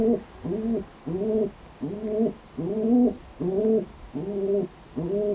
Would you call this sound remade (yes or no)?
no